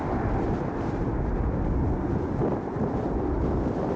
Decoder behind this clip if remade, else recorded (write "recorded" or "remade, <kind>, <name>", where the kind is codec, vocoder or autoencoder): recorded